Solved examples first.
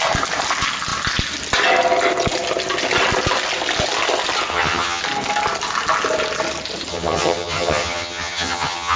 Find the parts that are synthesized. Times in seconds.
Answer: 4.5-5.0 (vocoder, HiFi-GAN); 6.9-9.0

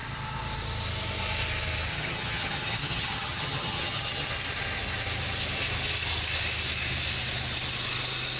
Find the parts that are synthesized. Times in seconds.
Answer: 1.9-4.3 (vocoder, HiFi-GAN)